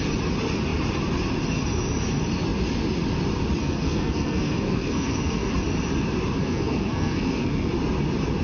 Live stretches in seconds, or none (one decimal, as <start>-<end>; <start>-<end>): 0.0-3.6; 5.5-6.4; 7.7-8.4